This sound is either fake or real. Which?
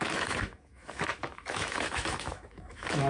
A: fake